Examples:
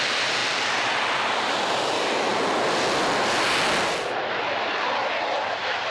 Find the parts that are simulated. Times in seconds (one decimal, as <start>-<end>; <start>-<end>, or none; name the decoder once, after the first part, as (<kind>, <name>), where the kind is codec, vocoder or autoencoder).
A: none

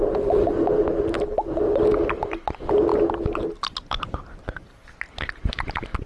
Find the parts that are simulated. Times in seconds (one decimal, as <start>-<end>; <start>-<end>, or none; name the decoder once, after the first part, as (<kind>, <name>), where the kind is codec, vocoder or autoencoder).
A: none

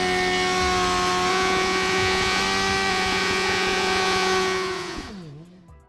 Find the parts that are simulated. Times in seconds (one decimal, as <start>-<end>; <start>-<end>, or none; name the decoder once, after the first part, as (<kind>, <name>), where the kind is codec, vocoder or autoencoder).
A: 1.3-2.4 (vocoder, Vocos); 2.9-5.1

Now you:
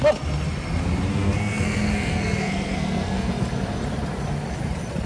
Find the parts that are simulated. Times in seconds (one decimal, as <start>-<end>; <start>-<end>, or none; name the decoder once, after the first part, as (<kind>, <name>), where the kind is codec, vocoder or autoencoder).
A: 1.1-3.3 (codec, SNAC)

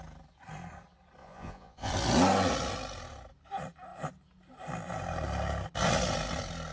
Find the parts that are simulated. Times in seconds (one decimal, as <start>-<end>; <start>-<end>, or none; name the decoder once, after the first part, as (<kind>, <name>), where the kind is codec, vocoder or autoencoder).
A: 1.2-1.9 (vocoder, Vocos)